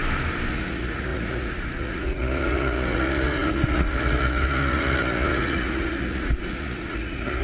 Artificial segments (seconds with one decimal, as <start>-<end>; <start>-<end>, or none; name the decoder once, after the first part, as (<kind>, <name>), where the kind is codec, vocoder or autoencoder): 0.5-7.4 (vocoder, Vocos)